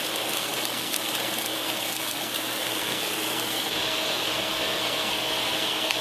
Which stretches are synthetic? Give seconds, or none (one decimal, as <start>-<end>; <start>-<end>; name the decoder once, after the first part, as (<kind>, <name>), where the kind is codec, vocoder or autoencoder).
0.0-6.0 (codec, SNAC)